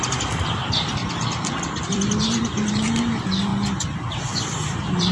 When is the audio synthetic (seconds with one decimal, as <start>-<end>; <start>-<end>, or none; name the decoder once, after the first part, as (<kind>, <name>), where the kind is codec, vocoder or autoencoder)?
0.0-1.0 (vocoder, BigVGAN v2); 1.8-3.5; 4.1-5.1